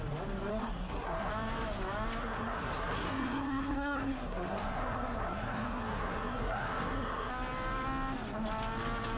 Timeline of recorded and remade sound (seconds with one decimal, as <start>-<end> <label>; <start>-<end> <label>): 0.0-0.5 recorded; 0.5-1.3 remade; 1.3-2.2 recorded; 2.2-7.3 remade; 7.3-9.2 recorded